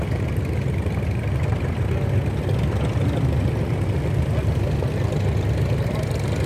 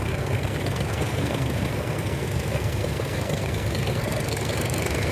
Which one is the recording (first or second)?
first